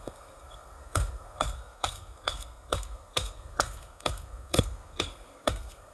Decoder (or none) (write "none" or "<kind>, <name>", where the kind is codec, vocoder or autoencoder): codec, SNAC